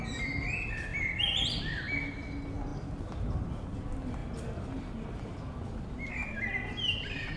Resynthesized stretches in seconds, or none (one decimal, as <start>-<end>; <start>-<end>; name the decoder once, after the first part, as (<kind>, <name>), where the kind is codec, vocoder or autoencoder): 0.9-1.6 (vocoder, BigVGAN v2); 4.2-6.1